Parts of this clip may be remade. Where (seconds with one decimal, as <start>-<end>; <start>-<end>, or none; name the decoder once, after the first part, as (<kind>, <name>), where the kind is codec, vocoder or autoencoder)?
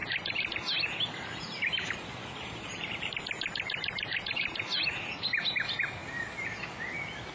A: 0.5-6.0 (vocoder, BigVGAN v2)